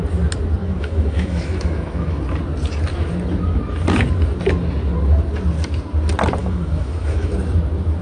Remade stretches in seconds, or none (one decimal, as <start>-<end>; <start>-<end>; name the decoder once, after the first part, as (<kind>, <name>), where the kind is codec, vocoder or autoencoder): 0.6-2.2 (autoencoder, DAC-VAE); 6.4-7.3